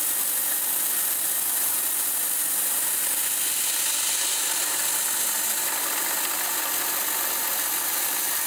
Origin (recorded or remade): recorded